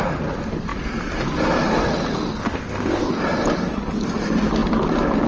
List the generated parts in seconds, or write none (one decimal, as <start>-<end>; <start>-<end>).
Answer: 2.4-3.1